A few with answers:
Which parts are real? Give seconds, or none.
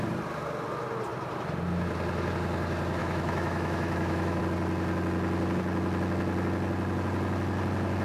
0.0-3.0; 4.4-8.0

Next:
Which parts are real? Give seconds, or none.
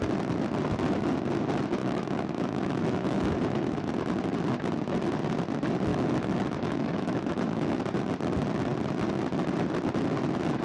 0.0-1.8; 3.9-5.9; 7.8-10.6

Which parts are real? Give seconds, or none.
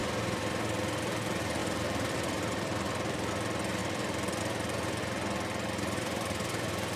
0.5-1.6; 3.3-3.8; 4.4-7.0